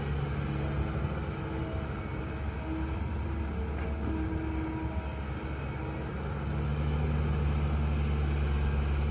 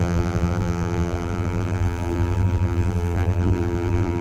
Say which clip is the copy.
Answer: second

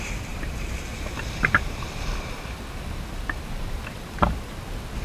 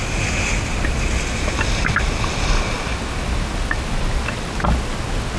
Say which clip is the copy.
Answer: first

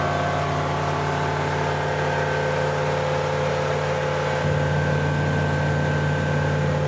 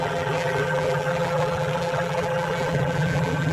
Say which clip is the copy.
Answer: second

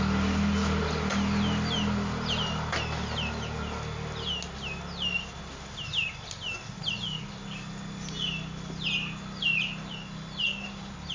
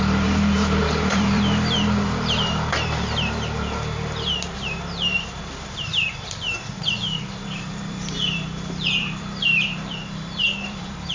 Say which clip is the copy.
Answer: second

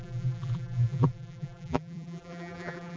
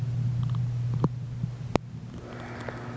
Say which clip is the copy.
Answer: first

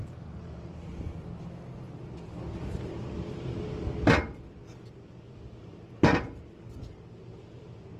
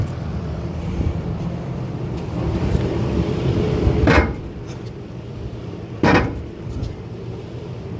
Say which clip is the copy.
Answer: second